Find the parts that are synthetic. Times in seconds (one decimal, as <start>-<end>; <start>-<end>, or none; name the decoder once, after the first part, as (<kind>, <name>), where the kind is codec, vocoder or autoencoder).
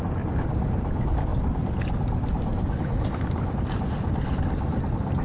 none